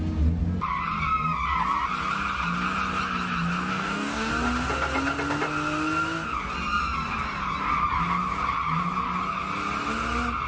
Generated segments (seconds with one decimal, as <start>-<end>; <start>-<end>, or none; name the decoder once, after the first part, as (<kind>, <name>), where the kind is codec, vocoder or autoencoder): 3.7-4.3 (codec, DAC)